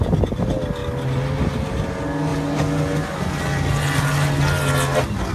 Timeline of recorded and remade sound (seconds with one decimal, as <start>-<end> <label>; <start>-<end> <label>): 0.0-5.3 recorded